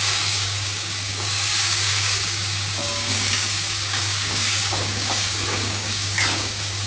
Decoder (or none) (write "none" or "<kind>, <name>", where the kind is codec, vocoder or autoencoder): codec, DAC